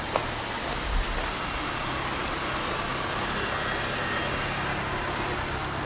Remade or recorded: recorded